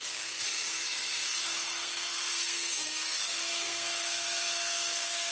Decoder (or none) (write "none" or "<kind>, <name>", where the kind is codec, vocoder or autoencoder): codec, SNAC